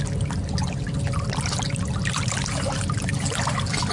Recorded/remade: recorded